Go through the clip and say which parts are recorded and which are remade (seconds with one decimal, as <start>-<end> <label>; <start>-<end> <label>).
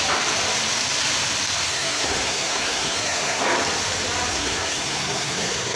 0.0-1.7 recorded; 1.7-3.4 remade; 3.4-4.3 recorded; 4.3-5.8 remade